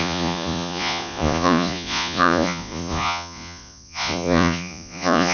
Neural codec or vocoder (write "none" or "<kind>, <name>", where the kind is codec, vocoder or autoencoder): vocoder, Vocos